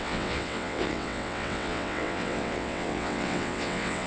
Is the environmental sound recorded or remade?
remade